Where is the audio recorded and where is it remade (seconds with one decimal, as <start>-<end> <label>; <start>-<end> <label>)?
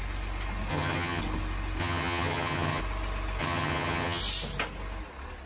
0.0-0.7 recorded; 0.7-1.2 remade; 1.2-1.8 recorded; 1.8-2.8 remade; 2.8-3.4 recorded; 3.4-4.2 remade; 4.2-5.5 recorded